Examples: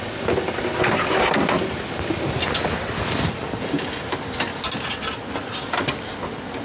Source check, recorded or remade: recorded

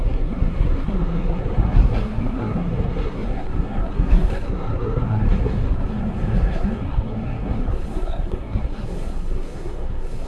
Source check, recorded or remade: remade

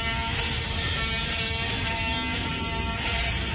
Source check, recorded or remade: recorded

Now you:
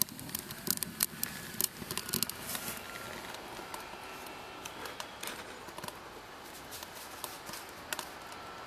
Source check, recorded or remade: recorded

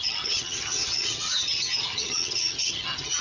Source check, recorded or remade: remade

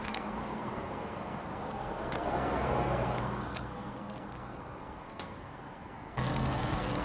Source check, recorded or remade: remade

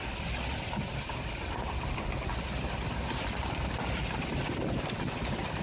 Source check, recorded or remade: recorded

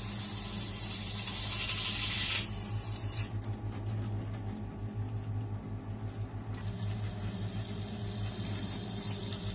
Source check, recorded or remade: recorded